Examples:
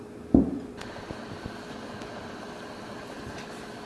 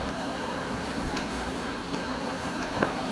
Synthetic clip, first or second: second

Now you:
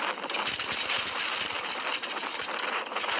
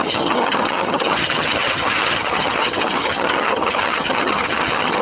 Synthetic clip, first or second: second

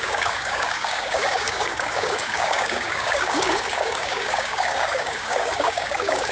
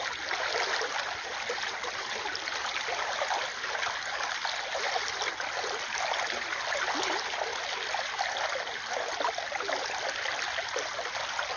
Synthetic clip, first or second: first